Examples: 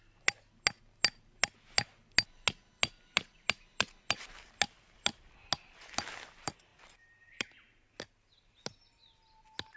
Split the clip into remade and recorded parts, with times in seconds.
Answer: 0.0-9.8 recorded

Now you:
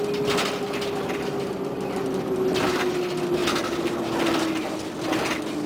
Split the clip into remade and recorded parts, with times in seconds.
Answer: 0.0-5.7 recorded

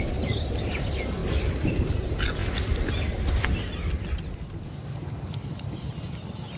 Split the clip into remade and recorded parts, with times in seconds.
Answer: 0.0-6.6 recorded

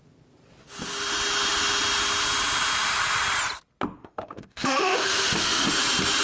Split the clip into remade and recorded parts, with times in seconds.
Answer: 0.0-4.0 recorded; 4.0-5.7 remade; 5.7-6.2 recorded

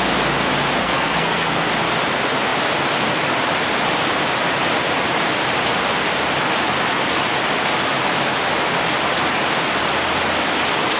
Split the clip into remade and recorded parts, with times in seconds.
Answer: 0.0-0.8 recorded; 0.8-1.7 remade; 1.7-11.0 recorded

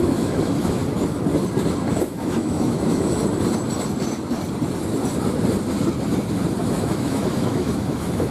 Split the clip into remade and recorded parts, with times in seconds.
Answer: 0.0-0.8 remade; 0.8-1.9 recorded; 1.9-3.2 remade; 3.2-6.6 recorded; 6.6-8.3 remade